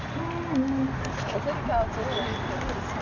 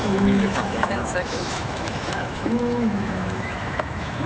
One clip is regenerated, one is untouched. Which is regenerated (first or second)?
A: second